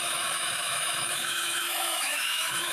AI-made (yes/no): yes